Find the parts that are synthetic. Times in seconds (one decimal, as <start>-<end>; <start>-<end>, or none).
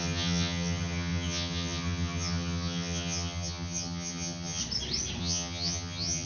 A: 0.0-4.6; 5.2-6.3